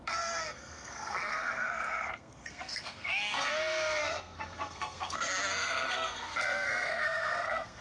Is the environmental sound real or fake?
fake